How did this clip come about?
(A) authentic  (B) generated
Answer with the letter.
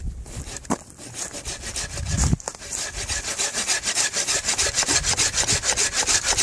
A